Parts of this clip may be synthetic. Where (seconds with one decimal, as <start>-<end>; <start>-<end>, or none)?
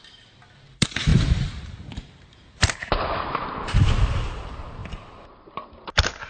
0.0-6.3